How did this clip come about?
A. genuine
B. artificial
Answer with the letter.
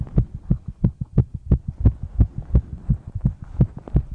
A